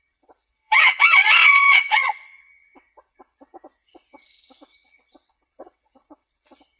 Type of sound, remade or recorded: remade